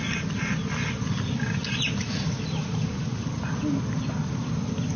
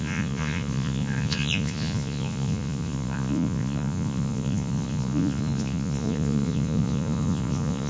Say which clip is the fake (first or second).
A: second